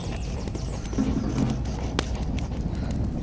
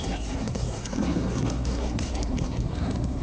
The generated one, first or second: second